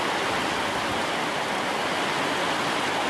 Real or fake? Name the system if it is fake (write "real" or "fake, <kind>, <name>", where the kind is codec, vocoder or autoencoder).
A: real